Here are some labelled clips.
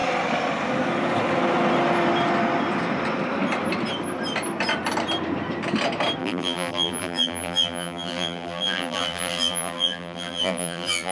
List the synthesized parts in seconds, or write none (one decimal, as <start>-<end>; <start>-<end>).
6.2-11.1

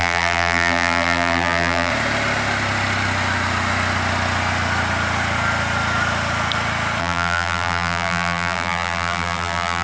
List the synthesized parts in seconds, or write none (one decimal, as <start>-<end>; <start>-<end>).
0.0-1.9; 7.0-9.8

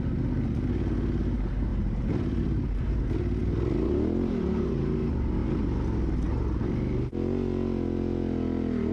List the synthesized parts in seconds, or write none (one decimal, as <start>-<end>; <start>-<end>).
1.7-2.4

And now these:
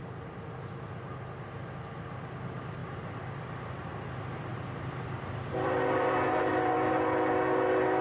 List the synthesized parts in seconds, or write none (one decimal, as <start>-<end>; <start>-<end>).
2.8-3.9; 4.5-6.9

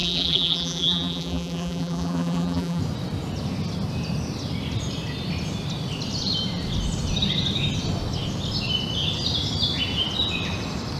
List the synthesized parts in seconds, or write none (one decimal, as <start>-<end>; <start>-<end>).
0.0-2.8

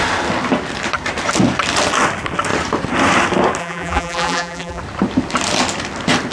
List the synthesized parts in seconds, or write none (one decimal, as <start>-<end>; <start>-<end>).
3.6-4.8

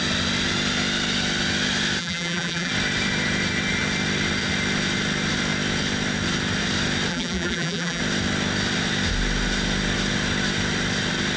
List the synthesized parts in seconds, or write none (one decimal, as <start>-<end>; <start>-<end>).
2.0-2.7; 7.1-8.0

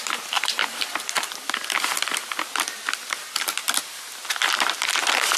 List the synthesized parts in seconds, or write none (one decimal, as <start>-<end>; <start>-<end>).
0.0-0.6; 3.8-5.4